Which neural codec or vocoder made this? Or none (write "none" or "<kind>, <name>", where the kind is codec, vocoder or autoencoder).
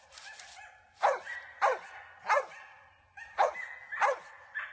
none